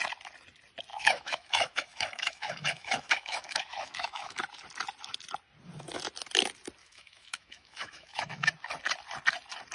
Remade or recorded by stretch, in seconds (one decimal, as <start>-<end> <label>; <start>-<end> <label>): 0.0-0.9 recorded; 0.9-4.4 remade; 4.4-6.8 recorded; 6.8-8.5 remade; 8.5-9.7 recorded

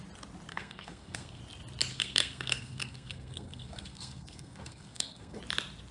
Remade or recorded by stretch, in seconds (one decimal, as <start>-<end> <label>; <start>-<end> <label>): 0.0-0.5 recorded; 0.5-1.4 remade; 1.4-1.9 recorded; 1.9-5.4 remade; 5.4-5.9 recorded

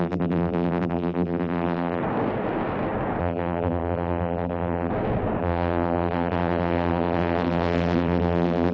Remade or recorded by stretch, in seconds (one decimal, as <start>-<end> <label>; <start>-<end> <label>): 0.0-2.0 remade; 2.0-3.2 recorded; 3.2-4.9 remade; 4.9-5.4 recorded; 5.4-8.7 remade

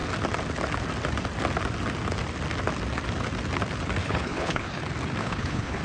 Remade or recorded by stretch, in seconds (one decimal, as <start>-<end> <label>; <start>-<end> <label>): 0.0-4.0 recorded; 4.0-4.8 remade; 4.8-5.2 recorded; 5.2-5.8 remade

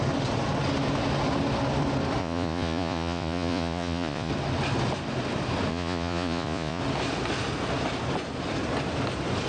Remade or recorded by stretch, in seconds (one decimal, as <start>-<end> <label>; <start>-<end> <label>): 0.0-2.2 recorded; 2.2-4.3 remade; 4.3-5.7 recorded; 5.7-6.8 remade; 6.8-9.5 recorded

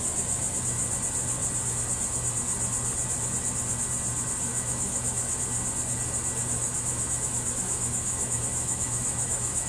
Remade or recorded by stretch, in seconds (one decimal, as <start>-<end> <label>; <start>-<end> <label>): 0.0-4.5 recorded; 4.5-5.4 remade; 5.4-6.4 recorded; 6.4-9.7 remade

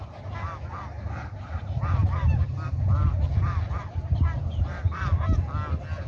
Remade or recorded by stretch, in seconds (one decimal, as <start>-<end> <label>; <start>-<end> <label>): 0.0-6.1 recorded

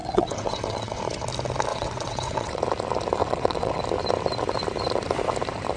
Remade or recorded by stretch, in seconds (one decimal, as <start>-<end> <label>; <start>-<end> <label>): 0.0-1.0 remade; 1.0-1.7 recorded; 1.7-2.6 remade; 2.6-3.2 recorded; 3.2-3.8 remade; 3.8-5.8 recorded